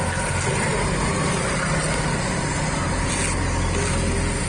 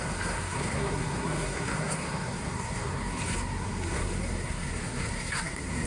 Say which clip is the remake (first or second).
second